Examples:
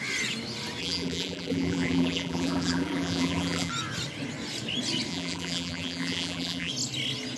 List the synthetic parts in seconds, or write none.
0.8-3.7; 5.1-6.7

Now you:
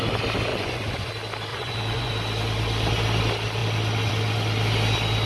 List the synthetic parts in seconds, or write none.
0.5-1.1; 1.5-2.1

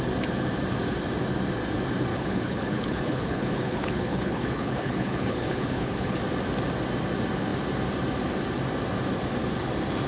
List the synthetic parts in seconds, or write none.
2.1-6.2

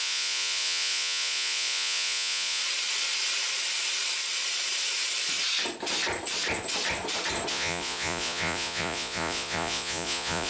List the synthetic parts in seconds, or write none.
0.0-2.6; 7.5-10.5